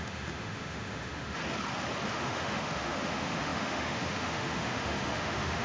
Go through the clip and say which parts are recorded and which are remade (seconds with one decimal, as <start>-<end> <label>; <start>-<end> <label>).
0.0-1.4 remade; 1.4-2.1 recorded; 2.1-5.6 remade